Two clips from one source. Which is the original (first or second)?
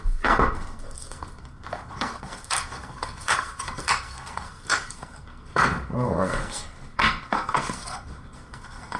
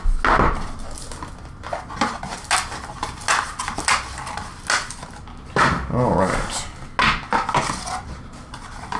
second